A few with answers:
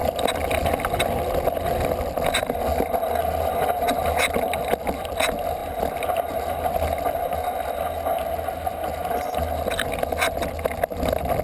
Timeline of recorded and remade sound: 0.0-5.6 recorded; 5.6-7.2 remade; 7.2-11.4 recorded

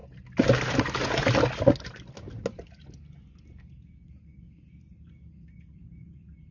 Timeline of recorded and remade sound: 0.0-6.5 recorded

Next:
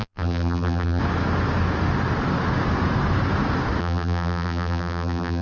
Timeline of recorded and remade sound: 0.0-1.0 remade; 1.0-3.8 recorded; 3.8-5.4 remade

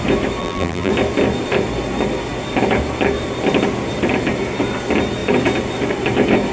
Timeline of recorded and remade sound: 0.0-0.4 recorded; 0.4-0.9 remade; 0.9-6.5 recorded

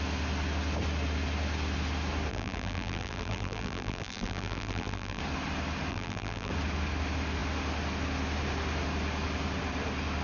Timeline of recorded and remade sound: 0.0-2.3 recorded; 2.3-5.2 remade; 5.2-5.9 recorded; 5.9-6.5 remade; 6.5-10.2 recorded

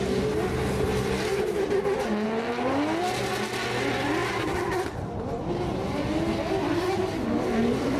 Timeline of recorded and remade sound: 0.0-8.0 recorded